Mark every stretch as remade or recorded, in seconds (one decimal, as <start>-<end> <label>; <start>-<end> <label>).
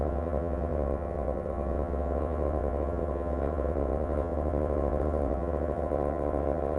0.0-6.8 remade